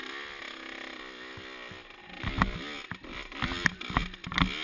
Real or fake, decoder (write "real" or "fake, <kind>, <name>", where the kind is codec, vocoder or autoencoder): real